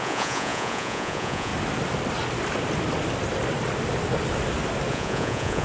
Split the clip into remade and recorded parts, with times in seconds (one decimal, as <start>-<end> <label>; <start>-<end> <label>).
0.0-1.5 remade; 1.5-4.9 recorded; 4.9-5.6 remade